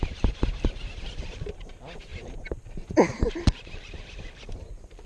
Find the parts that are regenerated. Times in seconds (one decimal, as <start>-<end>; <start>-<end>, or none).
none